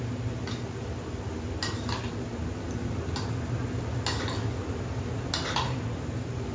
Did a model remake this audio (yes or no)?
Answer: no